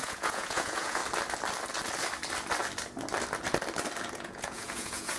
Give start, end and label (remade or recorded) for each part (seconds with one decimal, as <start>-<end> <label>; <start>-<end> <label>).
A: 0.0-1.0 remade; 1.0-4.1 recorded; 4.1-5.2 remade